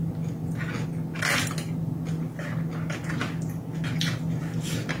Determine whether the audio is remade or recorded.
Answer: recorded